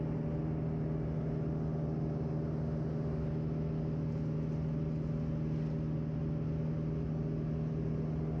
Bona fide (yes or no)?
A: yes